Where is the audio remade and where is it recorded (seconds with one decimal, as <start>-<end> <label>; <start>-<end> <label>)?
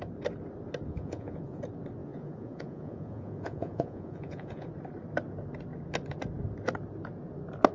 0.0-0.9 recorded; 0.9-1.6 remade; 1.6-2.0 recorded; 2.0-4.7 remade; 4.7-7.7 recorded